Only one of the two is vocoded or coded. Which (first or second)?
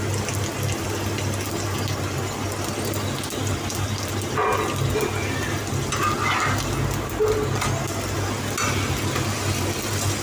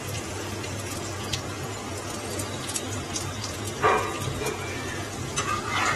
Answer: second